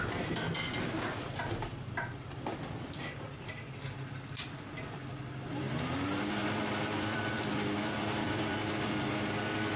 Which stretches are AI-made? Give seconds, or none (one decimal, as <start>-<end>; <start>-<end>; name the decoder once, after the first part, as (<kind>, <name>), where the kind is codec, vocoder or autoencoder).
1.7-3.7 (vocoder, BigVGAN v2); 6.4-9.0

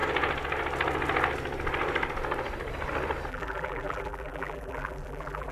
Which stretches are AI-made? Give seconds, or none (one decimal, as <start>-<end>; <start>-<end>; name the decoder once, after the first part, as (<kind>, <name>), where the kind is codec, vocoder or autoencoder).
3.3-5.5 (vocoder, BigVGAN v2)

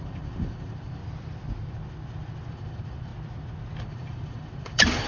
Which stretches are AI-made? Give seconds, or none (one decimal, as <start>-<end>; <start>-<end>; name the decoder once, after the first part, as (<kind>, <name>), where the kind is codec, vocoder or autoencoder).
0.0-1.0 (vocoder, BigVGAN v2); 2.5-3.1; 3.8-5.1

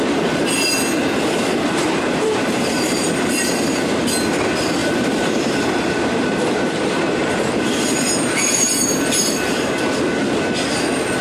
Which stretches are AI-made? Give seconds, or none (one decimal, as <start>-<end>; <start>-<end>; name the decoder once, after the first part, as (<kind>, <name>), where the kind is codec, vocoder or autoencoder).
1.5-3.9 (vocoder, BigVGAN v2); 4.8-9.9

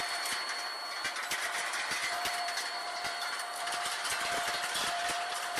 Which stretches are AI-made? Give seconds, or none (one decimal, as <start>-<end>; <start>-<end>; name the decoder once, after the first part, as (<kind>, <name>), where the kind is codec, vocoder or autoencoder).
2.0-5.6 (vocoder, BigVGAN v2)

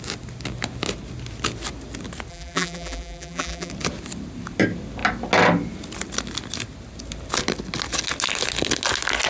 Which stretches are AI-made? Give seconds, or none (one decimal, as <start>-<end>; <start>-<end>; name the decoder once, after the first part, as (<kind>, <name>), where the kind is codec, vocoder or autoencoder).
2.3-3.7 (vocoder, BigVGAN v2)